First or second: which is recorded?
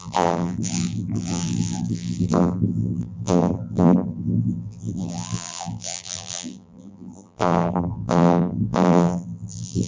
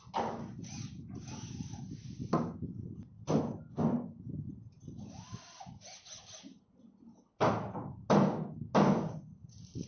second